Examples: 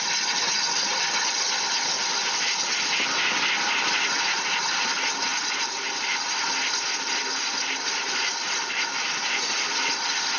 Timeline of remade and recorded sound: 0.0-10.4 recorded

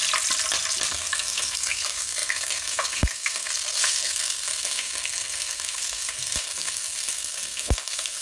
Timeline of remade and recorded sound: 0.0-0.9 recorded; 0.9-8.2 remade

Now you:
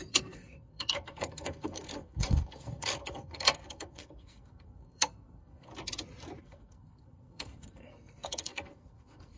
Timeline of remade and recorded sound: 0.0-5.7 remade; 5.7-6.4 recorded; 6.4-9.4 remade